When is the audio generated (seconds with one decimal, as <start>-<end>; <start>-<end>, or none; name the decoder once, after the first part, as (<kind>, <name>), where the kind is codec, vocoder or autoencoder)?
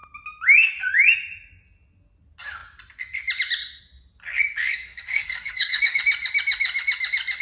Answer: 4.6-6.0 (codec, DAC)